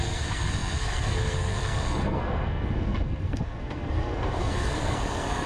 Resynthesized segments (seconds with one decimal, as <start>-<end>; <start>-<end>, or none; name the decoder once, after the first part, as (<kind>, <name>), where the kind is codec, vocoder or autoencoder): 0.0-5.5 (codec, SNAC)